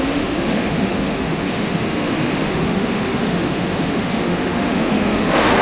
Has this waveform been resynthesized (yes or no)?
yes